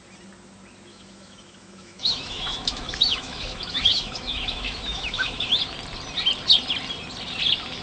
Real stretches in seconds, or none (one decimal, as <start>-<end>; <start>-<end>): 0.0-0.9; 5.6-7.8